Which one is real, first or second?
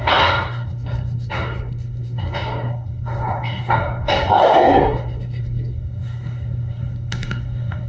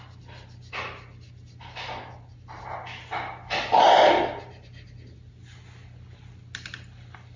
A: second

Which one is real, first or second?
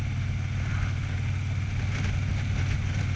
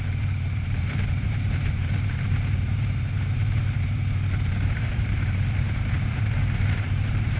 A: first